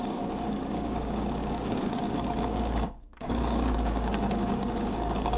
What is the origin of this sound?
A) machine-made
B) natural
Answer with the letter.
A